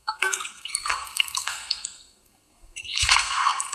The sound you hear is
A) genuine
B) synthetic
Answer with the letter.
B